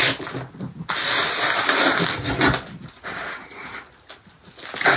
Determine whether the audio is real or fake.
real